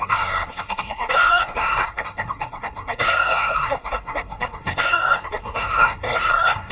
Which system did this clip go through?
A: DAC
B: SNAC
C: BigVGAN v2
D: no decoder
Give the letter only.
B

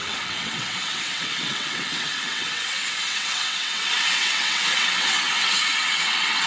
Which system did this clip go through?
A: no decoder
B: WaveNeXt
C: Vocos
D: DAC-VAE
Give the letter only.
B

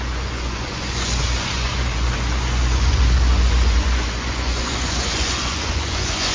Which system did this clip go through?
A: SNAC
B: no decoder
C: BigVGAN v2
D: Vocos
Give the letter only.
D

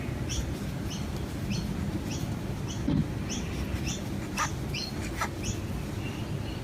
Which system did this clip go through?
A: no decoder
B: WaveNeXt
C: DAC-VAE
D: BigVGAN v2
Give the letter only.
A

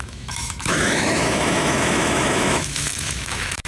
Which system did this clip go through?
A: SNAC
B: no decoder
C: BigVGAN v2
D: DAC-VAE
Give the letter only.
D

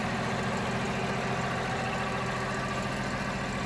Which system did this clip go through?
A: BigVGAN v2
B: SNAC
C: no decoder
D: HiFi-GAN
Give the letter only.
C